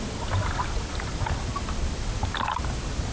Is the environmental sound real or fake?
real